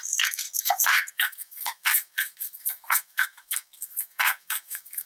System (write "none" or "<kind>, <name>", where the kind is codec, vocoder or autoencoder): codec, SNAC